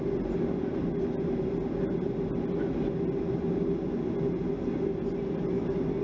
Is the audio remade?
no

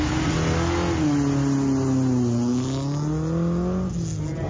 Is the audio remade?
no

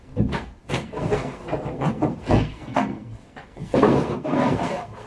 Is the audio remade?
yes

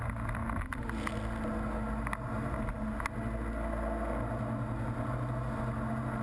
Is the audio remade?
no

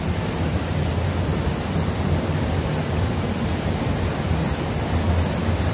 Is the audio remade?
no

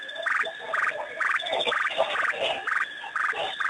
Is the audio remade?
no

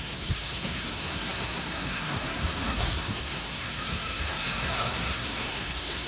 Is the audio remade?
yes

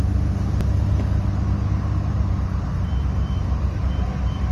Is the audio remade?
no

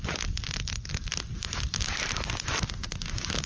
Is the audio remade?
no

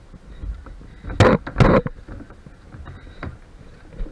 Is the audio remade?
no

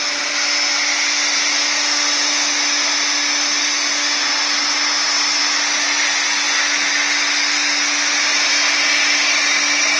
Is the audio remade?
no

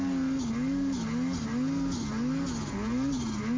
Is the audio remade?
no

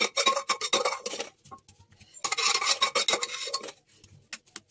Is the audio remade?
no